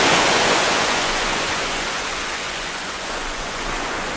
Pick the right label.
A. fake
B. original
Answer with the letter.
A